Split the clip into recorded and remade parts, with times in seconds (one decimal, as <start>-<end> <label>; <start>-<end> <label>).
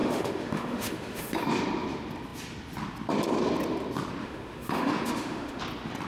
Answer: 0.0-1.4 remade; 1.4-4.2 recorded; 4.2-5.6 remade; 5.6-6.1 recorded